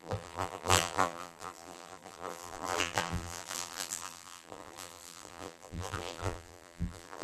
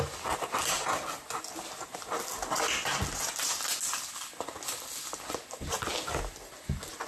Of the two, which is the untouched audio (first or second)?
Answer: second